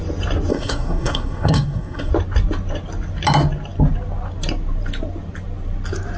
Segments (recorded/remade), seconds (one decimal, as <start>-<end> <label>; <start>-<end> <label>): 0.0-0.5 recorded; 0.5-2.1 remade; 2.1-6.2 recorded